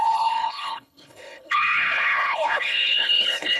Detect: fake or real fake